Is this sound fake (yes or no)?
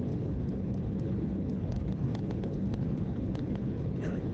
yes